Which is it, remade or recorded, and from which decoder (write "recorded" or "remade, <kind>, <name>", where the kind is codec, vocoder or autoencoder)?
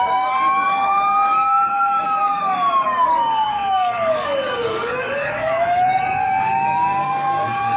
remade, codec, DAC